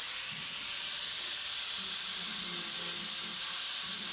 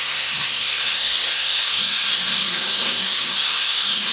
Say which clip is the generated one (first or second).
second